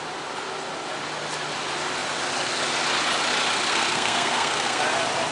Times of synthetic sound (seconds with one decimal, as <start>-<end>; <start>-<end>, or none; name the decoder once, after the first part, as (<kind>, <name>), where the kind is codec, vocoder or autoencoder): 3.7-4.8 (codec, SNAC)